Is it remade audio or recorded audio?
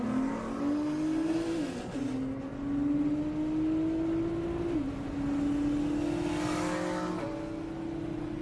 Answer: recorded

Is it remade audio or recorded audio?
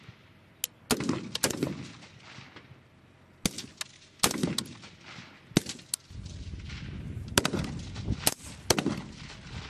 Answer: recorded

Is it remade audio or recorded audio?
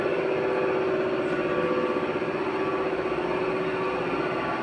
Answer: recorded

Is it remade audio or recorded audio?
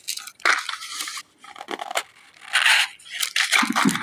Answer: recorded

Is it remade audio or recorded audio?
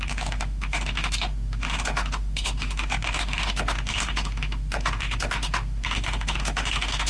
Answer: remade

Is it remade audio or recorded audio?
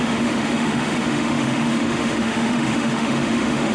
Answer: remade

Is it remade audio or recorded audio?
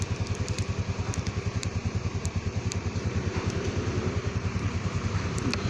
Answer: recorded